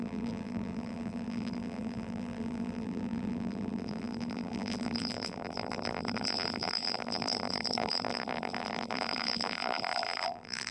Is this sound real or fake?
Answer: fake